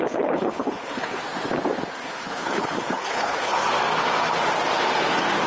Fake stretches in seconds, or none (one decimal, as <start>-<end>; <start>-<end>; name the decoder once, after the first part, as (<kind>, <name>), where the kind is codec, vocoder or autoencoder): 0.0-1.2 (codec, HILCodec); 2.0-3.6